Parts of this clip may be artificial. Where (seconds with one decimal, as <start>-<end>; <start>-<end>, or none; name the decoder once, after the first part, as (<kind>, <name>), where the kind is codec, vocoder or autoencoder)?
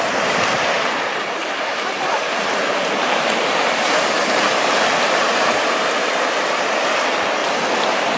0.0-7.4 (vocoder, BigVGAN v2)